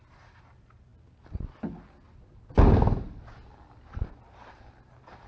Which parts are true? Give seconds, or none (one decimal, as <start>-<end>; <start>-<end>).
0.9-4.1